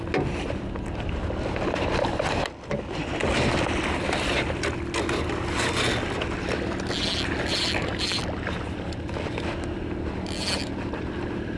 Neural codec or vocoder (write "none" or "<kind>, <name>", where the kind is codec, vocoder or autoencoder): none